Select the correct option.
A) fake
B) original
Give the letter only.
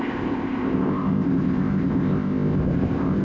A